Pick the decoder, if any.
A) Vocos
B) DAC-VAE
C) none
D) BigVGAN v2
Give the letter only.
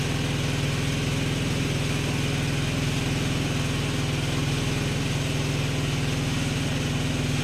C